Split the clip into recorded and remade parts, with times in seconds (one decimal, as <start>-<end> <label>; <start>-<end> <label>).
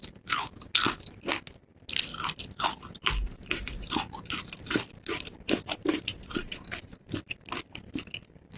0.0-3.4 recorded; 3.4-7.8 remade; 7.8-8.6 recorded